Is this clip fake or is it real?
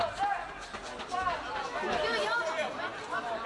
real